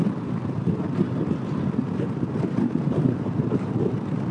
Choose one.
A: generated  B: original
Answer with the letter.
B